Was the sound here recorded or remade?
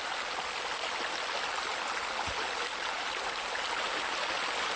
recorded